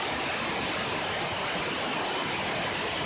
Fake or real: real